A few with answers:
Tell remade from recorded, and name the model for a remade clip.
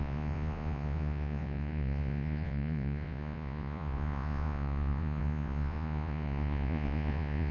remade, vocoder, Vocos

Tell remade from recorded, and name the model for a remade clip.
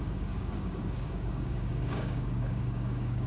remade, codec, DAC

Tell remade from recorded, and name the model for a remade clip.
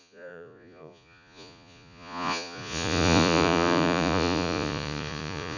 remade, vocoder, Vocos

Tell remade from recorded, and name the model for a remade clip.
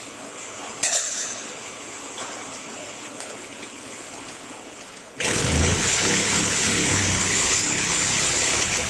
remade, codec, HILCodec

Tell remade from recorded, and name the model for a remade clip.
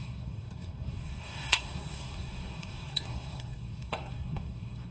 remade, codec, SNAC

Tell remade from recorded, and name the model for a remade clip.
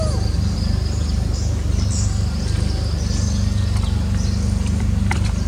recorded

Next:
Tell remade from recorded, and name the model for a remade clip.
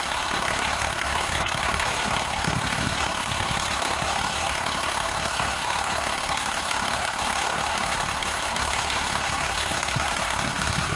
remade, codec, SNAC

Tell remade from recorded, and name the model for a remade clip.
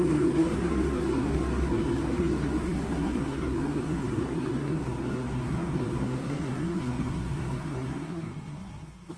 remade, codec, SNAC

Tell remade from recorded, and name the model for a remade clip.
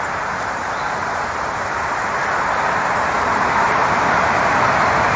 remade, vocoder, BigVGAN v2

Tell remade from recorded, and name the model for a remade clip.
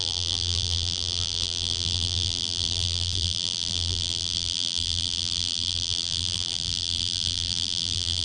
remade, vocoder, BigVGAN v2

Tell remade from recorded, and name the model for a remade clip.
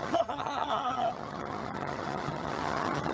remade, vocoder, HiFi-GAN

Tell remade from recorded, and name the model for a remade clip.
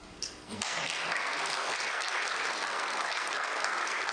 remade, codec, SNAC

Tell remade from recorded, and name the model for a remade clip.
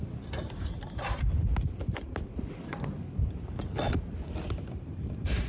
recorded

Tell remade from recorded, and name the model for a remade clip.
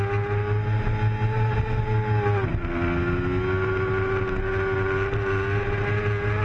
recorded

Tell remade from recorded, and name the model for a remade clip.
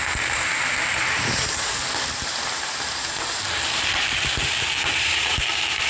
remade, vocoder, BigVGAN v2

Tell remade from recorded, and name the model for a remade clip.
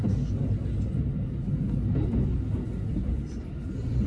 recorded